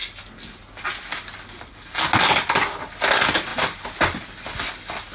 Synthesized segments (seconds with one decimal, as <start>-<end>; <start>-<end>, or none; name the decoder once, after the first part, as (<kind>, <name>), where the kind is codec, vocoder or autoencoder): none